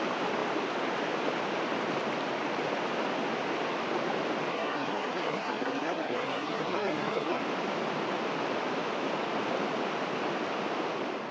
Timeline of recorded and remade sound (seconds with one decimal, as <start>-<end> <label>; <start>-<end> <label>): 0.0-4.5 recorded; 4.5-7.4 remade; 7.4-11.3 recorded